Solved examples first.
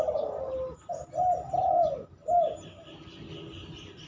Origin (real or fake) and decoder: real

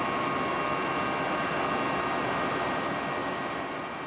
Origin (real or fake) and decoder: real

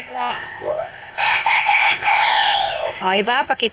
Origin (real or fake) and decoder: fake, codec, ZipCodec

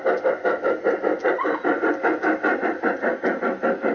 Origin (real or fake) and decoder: real